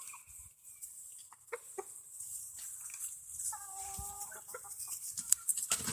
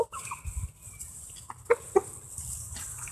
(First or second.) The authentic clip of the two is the second